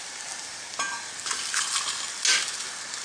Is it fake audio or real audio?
real